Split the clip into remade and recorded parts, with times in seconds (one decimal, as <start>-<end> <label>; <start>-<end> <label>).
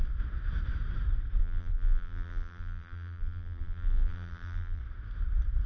0.0-1.4 recorded; 1.4-4.8 remade; 4.8-5.7 recorded